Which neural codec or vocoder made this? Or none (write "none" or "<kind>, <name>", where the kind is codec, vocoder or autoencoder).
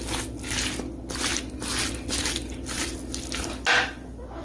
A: none